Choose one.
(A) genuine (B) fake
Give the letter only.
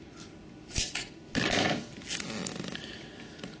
A